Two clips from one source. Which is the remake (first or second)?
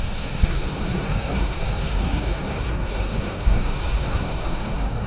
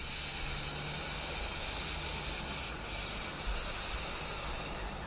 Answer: first